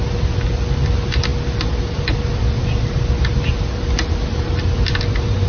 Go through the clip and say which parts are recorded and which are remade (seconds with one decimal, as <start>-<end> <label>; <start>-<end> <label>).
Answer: 0.0-5.5 recorded